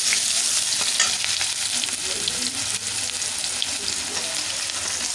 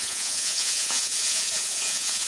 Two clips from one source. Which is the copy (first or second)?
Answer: second